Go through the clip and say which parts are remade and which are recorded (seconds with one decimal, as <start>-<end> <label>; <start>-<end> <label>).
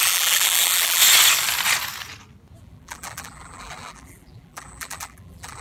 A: 0.0-1.0 remade; 1.0-2.6 recorded; 2.6-5.6 remade